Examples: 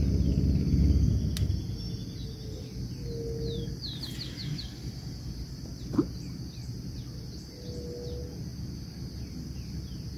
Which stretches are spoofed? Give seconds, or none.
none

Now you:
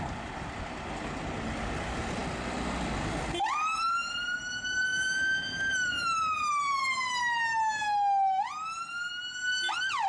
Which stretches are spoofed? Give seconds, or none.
4.9-6.8 (vocoder, BigVGAN v2)

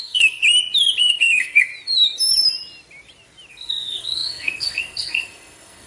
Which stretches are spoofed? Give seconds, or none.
0.0-0.4 (codec, SNAC); 1.0-1.7; 3.5-5.9